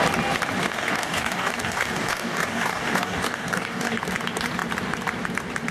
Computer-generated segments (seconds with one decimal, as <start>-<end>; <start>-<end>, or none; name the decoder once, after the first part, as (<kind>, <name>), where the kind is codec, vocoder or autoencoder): 0.6-4.0 (codec, DAC)